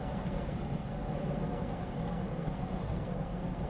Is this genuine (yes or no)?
no